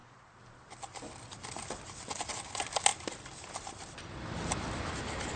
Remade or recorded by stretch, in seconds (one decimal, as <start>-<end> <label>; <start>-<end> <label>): 0.0-2.9 recorded; 2.9-5.4 remade